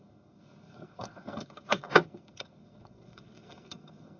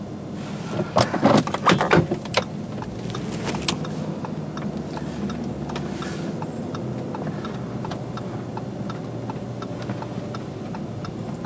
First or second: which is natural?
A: second